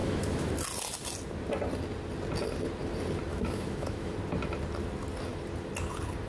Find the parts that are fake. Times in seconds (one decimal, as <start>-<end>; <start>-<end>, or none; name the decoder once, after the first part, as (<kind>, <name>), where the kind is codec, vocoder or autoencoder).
0.0-0.5 (autoencoder, DAC-VAE); 3.3-4.1